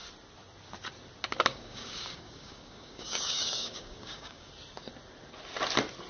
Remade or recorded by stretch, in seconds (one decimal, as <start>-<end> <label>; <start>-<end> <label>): 0.0-1.5 recorded; 1.5-4.5 remade; 4.5-6.1 recorded